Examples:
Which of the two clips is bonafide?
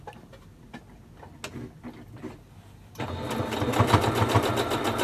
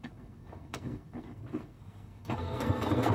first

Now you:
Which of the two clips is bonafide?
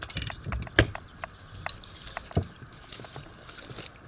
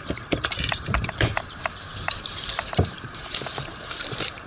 first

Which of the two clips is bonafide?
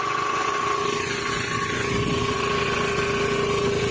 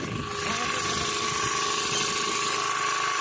second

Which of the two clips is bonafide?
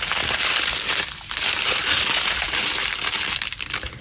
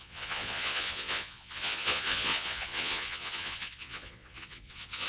first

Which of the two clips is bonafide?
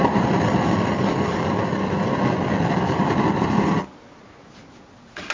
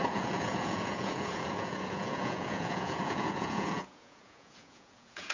first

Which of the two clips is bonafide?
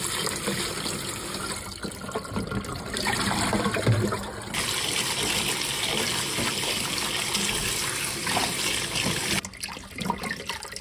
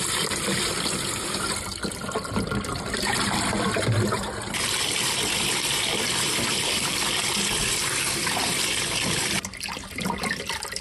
first